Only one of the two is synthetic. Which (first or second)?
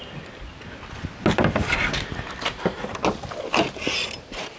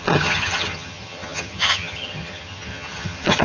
second